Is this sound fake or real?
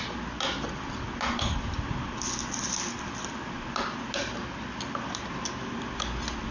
real